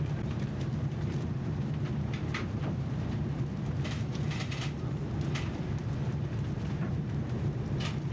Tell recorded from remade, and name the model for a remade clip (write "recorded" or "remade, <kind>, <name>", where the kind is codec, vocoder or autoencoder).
remade, vocoder, BigVGAN v2